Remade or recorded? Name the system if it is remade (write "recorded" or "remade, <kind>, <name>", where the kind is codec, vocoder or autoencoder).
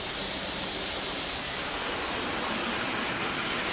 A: recorded